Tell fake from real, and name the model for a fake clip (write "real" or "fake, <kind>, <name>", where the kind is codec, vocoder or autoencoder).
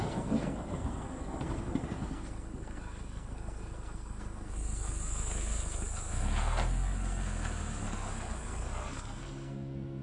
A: fake, codec, SNAC